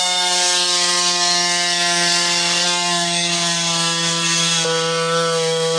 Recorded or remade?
remade